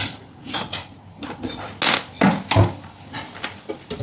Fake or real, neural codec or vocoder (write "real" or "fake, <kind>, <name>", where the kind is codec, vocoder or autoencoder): real